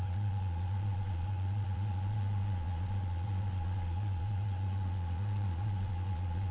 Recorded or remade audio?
remade